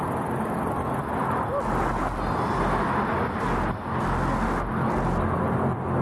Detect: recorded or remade recorded